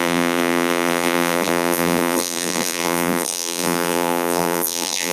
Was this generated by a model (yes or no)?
yes